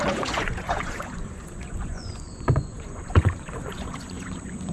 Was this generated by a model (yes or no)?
yes